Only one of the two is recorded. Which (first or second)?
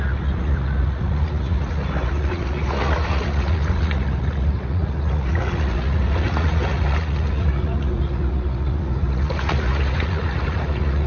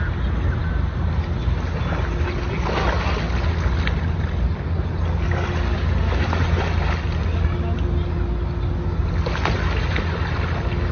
second